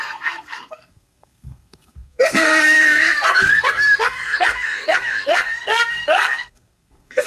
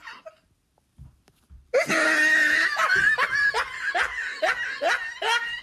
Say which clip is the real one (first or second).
second